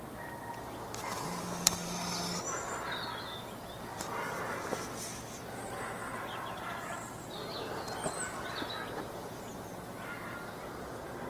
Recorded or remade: recorded